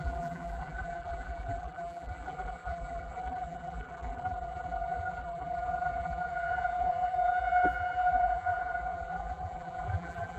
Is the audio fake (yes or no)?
yes